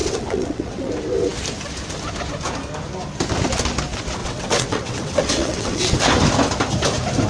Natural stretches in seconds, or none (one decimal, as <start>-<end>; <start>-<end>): 0.9-4.2; 6.0-7.3